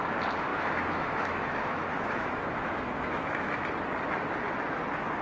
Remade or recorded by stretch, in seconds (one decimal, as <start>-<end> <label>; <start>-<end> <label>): 0.0-0.5 recorded; 0.5-3.6 remade; 3.6-5.2 recorded